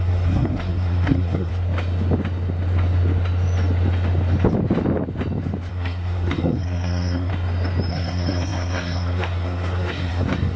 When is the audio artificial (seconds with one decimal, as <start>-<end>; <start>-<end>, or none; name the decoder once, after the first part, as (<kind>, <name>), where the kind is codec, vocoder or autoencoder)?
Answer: 0.0-1.5 (codec, SNAC); 5.7-7.3; 7.9-10.6